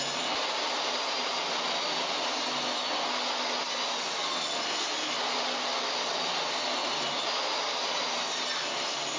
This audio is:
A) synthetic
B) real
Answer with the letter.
B